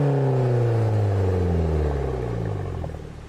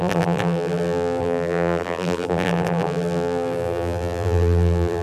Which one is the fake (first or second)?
second